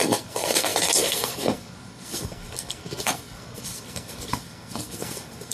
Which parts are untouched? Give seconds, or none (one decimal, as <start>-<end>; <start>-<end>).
none